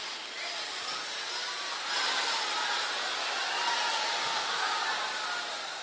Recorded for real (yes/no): yes